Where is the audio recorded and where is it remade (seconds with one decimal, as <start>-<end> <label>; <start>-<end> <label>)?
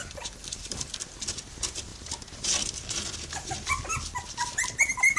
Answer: 0.0-0.9 remade; 0.9-5.2 recorded